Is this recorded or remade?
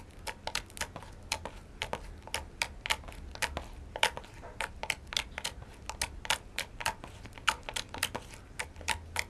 recorded